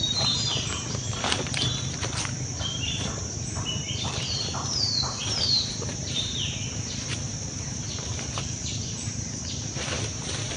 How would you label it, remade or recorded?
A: remade